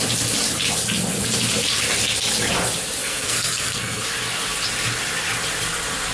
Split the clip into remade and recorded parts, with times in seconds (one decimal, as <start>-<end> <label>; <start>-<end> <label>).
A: 0.0-3.0 recorded; 3.0-4.0 remade; 4.0-6.1 recorded